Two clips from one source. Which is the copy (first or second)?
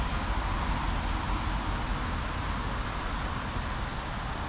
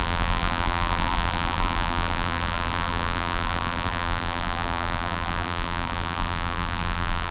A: second